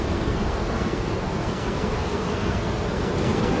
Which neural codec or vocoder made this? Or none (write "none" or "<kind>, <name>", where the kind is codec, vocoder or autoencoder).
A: codec, SNAC